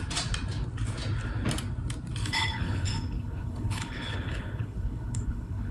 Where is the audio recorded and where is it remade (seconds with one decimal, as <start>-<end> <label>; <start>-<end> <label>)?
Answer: 0.0-2.2 recorded; 2.2-5.7 remade